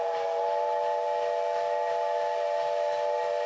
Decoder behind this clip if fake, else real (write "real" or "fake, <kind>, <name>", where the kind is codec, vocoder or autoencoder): real